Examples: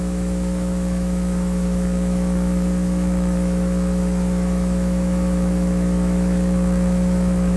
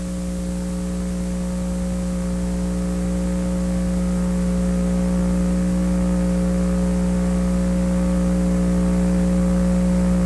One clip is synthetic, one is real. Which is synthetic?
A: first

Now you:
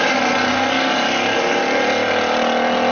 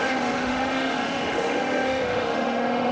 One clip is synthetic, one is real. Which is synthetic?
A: second